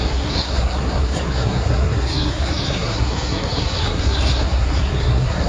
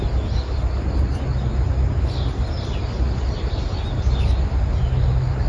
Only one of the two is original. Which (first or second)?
second